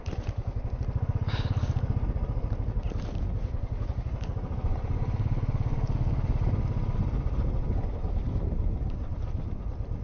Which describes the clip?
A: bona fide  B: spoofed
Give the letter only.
A